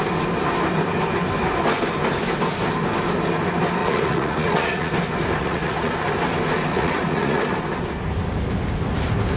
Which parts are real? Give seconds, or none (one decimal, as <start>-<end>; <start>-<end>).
0.0-3.8; 4.9-5.4; 5.9-6.7; 7.4-9.4